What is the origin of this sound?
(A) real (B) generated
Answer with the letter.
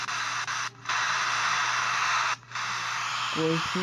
A